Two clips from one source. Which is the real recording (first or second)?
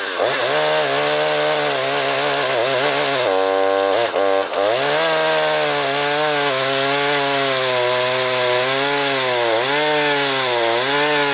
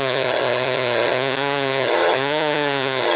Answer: first